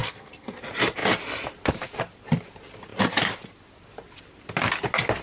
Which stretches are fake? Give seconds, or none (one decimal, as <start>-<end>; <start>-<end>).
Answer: 0.0-0.6